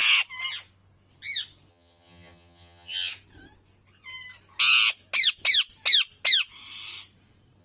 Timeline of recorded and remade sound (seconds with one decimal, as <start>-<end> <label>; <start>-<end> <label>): 0.0-1.7 recorded; 1.7-3.1 remade; 3.1-7.6 recorded